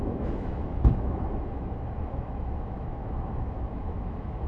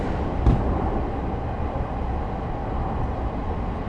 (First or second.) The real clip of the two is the second